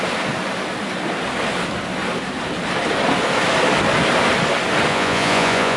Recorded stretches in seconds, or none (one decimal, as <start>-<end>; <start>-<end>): 0.0-4.9